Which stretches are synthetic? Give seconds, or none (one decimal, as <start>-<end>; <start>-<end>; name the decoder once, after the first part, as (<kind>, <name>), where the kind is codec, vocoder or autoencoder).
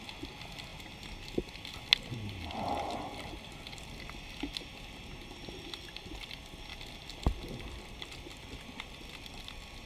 none